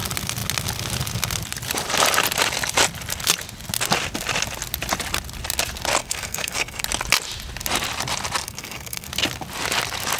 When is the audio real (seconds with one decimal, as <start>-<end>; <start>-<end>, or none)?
0.0-6.0; 6.8-8.4; 9.1-10.2